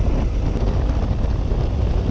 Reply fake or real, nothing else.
real